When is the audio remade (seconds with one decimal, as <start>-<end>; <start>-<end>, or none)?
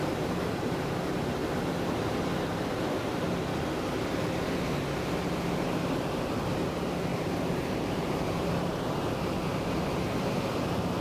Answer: 7.1-10.3